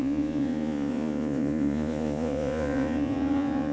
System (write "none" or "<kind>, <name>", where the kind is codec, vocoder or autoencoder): vocoder, Vocos